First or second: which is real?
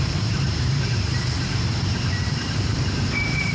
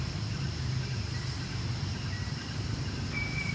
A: second